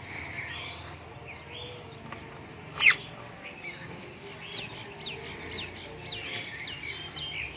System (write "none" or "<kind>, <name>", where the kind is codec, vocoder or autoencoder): none